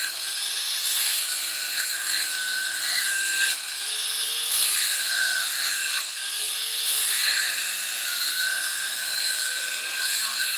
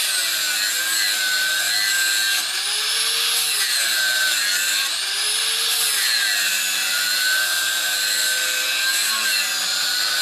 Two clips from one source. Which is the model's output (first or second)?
first